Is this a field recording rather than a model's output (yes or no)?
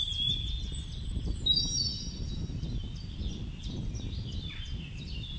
yes